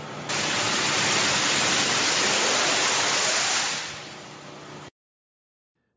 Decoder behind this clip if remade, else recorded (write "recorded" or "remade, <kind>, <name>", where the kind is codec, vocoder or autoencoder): recorded